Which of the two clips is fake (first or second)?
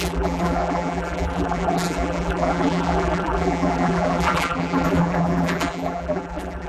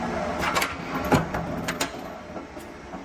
first